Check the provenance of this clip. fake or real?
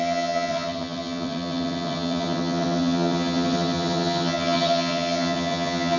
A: fake